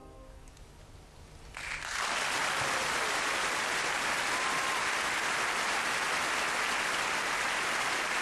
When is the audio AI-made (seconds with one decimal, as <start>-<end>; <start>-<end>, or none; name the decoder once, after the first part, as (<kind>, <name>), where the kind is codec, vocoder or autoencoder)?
0.0-0.8 (codec, DAC)